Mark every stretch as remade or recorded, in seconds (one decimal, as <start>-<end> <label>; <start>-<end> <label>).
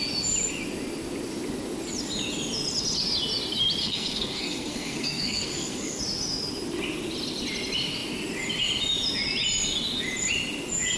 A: 0.0-3.8 recorded; 3.8-6.0 remade; 6.0-11.0 recorded